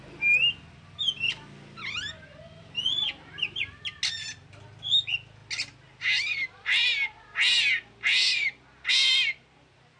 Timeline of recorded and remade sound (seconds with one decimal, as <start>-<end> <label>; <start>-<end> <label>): 0.0-10.0 recorded